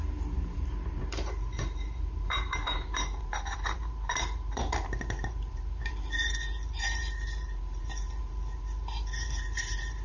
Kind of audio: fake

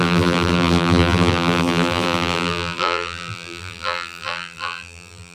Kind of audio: fake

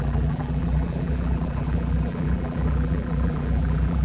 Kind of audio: fake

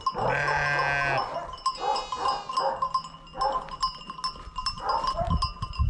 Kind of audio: real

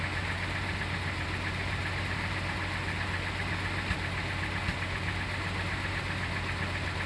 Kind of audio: real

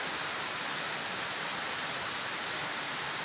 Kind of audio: fake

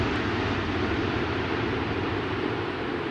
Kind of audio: real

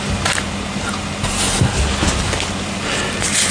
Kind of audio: real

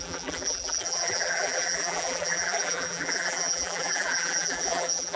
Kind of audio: fake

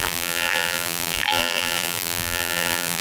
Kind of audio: fake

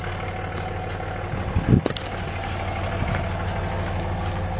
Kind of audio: real